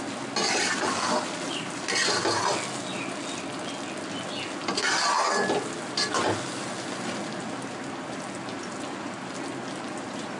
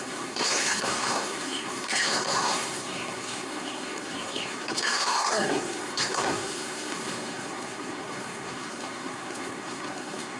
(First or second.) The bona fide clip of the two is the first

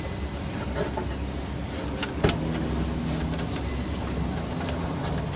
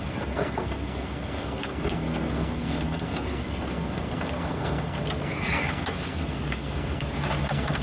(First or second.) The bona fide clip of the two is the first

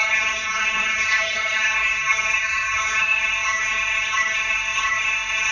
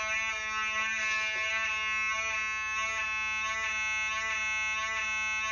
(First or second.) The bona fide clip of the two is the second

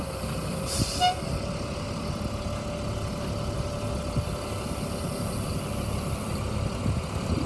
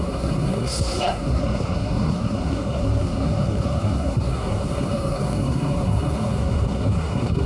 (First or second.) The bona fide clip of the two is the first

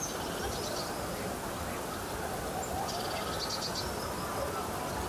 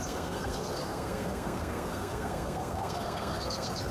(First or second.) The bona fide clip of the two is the first